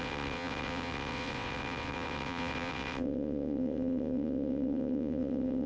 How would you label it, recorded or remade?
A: remade